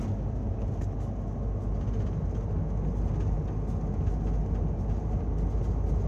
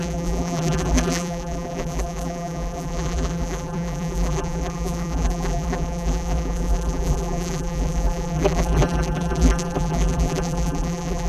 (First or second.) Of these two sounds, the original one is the first